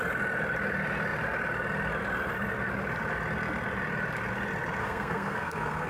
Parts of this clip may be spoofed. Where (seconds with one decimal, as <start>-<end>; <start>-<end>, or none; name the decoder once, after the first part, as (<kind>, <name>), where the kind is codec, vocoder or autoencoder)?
4.8-5.9 (codec, SNAC)